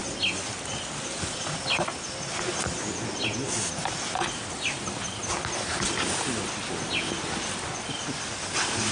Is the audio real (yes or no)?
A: yes